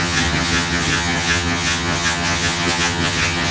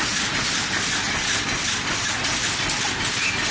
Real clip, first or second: second